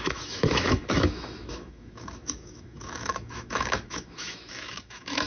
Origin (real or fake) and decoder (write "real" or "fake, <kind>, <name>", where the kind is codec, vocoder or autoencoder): fake, autoencoder, DAC-VAE